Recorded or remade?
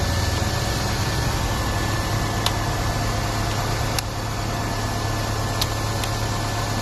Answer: recorded